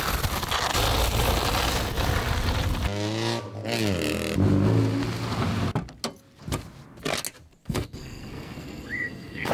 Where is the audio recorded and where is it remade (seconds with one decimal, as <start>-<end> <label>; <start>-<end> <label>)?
0.0-7.6 recorded; 7.6-9.5 remade

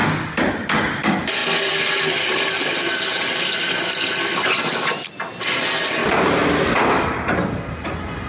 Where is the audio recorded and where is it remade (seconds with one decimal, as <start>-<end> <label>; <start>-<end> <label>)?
0.0-6.0 recorded; 6.0-6.6 remade; 6.6-8.3 recorded

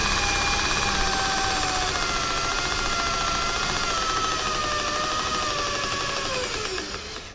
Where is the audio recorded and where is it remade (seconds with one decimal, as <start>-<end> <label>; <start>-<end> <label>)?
0.0-7.3 recorded

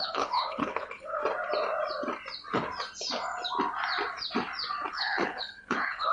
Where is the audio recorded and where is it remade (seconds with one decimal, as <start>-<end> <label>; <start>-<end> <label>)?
0.0-1.2 remade; 1.2-4.9 recorded; 4.9-6.1 remade

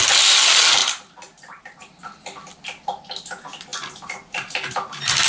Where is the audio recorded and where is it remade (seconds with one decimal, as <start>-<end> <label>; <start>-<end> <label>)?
0.0-0.8 recorded; 0.8-1.8 remade; 1.8-5.3 recorded

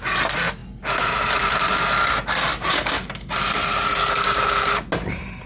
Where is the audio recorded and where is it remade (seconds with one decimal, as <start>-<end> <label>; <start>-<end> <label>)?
0.0-5.5 recorded

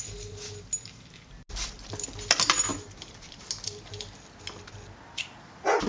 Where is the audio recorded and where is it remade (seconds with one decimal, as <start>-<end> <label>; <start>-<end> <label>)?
0.0-5.9 recorded